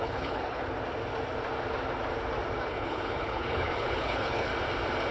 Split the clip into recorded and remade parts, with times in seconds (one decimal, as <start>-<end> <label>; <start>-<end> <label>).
0.0-0.6 remade; 0.6-2.6 recorded; 2.6-4.5 remade; 4.5-5.1 recorded